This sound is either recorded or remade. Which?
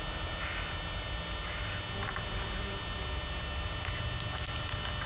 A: recorded